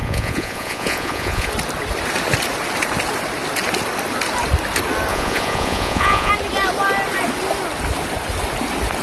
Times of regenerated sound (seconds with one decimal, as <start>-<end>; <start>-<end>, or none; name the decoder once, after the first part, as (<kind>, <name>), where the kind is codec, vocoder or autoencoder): 0.0-1.5 (vocoder, Vocos); 5.1-6.3